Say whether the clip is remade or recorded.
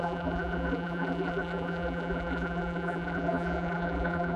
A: remade